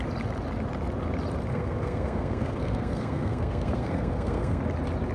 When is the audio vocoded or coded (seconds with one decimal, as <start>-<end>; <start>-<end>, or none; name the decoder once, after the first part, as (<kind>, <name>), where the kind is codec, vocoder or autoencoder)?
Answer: 1.5-4.6 (codec, SNAC)